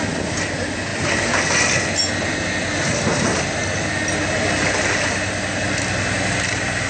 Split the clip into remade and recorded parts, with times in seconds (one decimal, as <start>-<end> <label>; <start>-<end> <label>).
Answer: 0.0-6.9 recorded